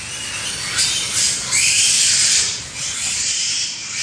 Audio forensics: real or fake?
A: real